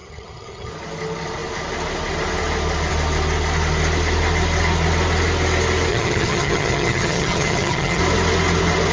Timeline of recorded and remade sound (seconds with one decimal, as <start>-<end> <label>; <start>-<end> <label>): 0.0-0.7 remade; 0.7-5.9 recorded; 5.9-8.0 remade; 8.0-8.9 recorded